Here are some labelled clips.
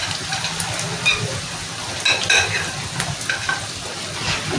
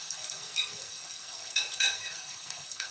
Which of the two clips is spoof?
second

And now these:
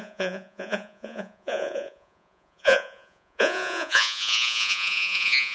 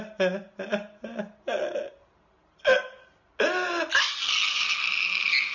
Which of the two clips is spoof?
first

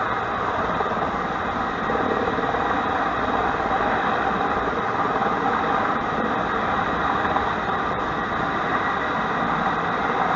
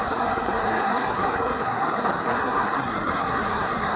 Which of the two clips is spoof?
second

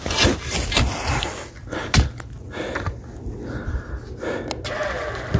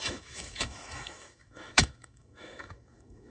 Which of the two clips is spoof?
second